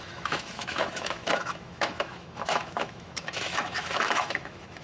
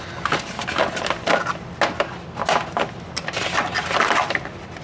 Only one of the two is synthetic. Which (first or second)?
first